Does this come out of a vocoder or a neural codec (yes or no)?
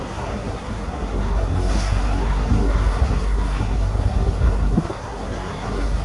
yes